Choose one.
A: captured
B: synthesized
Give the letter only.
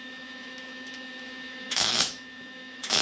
B